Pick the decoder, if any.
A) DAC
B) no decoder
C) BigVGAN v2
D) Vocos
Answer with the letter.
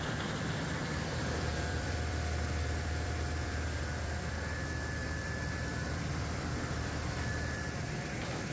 C